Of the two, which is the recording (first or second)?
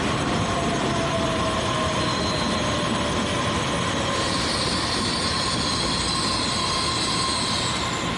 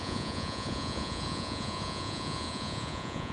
first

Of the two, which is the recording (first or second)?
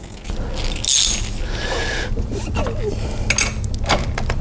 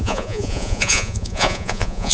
first